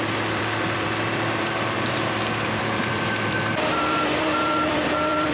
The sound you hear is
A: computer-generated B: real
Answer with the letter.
A